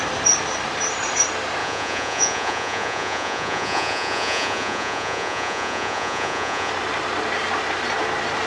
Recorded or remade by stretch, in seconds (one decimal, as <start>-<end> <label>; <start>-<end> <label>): 0.0-1.6 recorded; 1.6-6.7 remade; 6.7-8.5 recorded